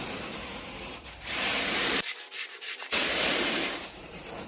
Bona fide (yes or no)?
no